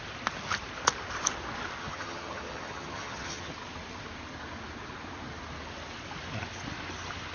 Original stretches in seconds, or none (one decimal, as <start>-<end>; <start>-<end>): 0.0-1.8; 3.5-7.3